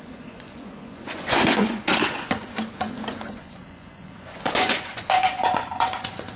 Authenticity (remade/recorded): remade